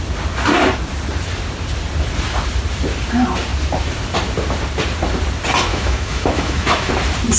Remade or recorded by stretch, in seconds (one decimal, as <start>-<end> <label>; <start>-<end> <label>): 0.0-5.7 recorded; 5.7-6.9 remade; 6.9-7.4 recorded